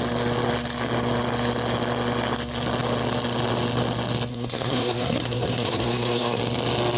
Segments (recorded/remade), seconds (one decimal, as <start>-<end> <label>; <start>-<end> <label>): 0.0-4.3 recorded; 4.3-6.4 remade; 6.4-7.0 recorded